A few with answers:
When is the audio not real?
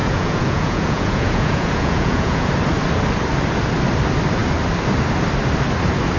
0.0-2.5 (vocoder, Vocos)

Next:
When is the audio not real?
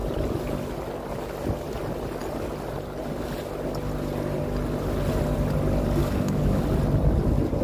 6.0-6.6 (codec, DAC)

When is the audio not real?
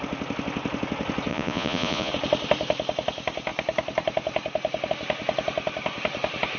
1.3-2.1 (vocoder, Vocos)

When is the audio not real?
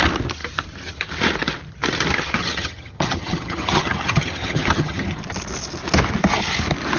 2.4-5.2 (vocoder, HiFi-GAN)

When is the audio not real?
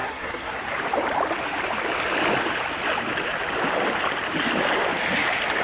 0.0-0.6 (codec, SNAC)